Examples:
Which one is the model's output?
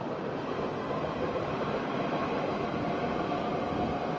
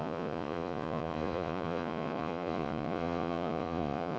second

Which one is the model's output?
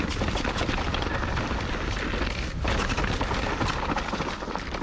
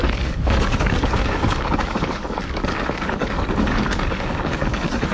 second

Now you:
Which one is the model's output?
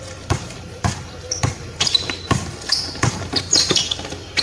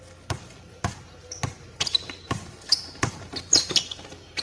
first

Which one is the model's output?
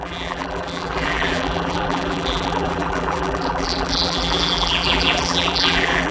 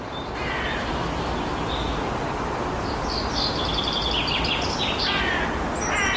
first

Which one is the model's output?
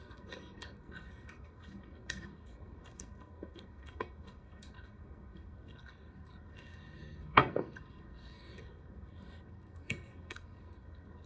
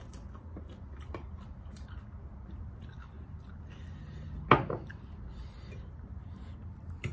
first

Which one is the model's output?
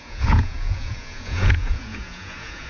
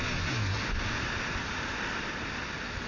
first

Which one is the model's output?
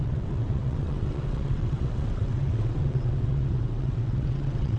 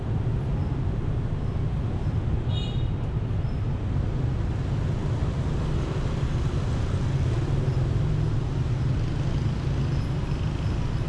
first